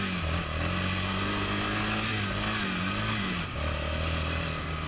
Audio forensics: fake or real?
real